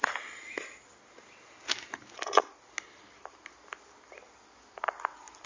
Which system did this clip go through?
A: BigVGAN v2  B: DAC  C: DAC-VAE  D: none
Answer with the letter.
D